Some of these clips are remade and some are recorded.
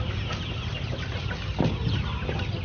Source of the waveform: recorded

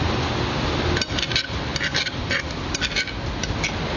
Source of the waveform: recorded